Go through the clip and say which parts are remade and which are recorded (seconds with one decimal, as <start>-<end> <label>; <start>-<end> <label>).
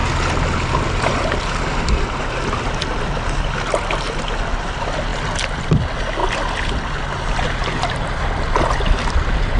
0.0-9.6 recorded